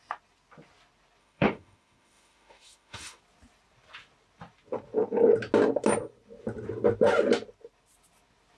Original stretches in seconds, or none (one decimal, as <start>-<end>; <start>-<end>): 0.0-1.2; 3.2-8.6